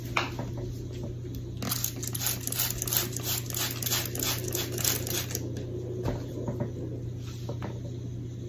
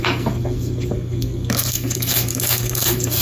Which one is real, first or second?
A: first